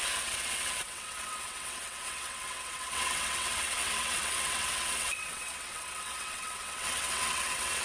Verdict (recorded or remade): remade